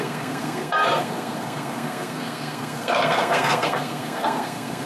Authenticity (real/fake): fake